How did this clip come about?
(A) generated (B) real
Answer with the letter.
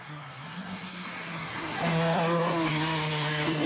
A